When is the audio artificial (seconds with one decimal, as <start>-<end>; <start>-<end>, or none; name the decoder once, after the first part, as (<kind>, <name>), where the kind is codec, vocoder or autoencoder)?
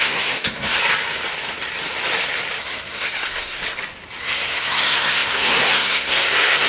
0.0-0.8 (codec, SNAC); 2.6-3.6; 4.2-6.7